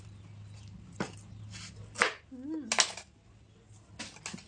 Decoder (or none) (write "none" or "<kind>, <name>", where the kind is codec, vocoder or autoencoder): none